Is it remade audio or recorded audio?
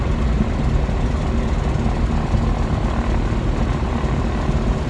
recorded